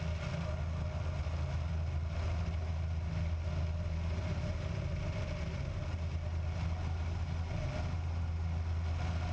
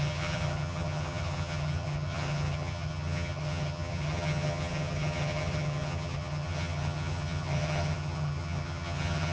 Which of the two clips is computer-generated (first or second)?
second